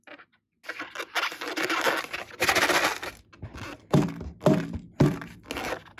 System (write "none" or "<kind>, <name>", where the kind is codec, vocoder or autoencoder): none